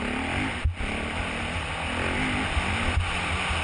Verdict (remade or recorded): recorded